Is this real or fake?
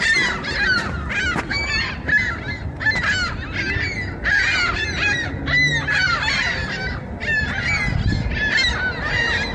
real